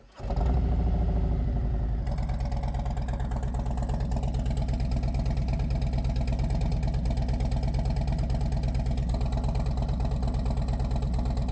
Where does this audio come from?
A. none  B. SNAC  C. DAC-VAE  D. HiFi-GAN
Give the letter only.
A